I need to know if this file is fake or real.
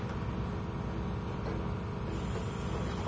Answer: real